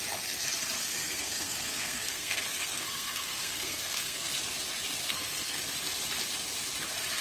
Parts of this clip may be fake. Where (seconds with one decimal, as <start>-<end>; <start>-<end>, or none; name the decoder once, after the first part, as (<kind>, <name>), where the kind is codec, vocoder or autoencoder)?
0.8-4.4 (codec, SNAC); 5.0-5.6